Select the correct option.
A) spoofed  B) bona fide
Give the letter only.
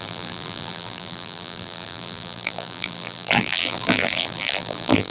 A